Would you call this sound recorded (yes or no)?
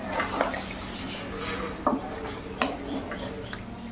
yes